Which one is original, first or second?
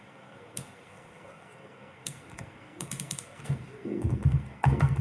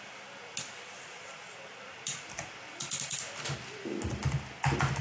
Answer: second